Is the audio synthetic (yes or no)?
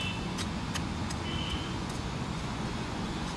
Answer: yes